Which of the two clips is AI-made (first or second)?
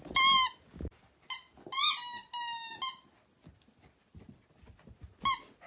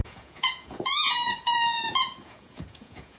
second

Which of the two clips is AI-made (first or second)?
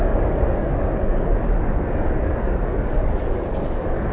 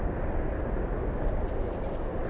first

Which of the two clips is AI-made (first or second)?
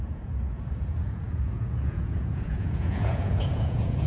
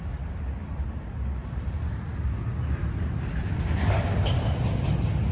first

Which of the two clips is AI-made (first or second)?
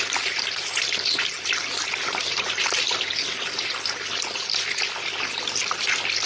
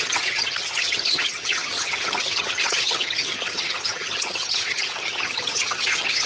second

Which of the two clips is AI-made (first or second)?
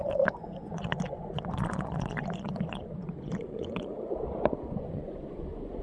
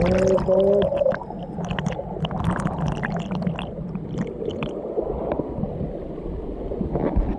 first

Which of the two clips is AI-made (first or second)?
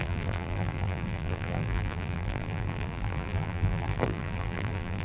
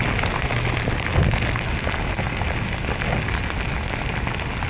first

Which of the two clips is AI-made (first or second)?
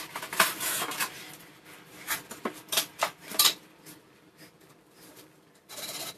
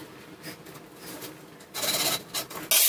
first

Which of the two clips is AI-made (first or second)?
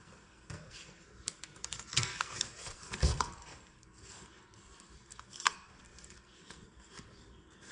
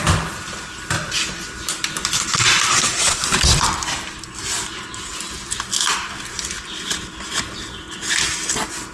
first